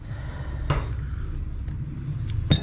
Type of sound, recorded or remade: recorded